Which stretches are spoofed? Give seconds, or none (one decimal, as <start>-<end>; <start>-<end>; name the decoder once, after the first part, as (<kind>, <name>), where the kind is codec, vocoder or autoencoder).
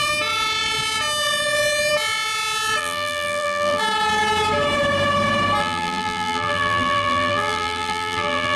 2.8-3.8 (vocoder, BigVGAN v2); 5.6-8.6